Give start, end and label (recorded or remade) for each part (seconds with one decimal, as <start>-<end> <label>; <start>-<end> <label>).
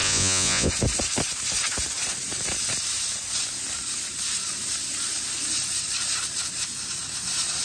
0.0-0.7 remade; 0.7-7.6 recorded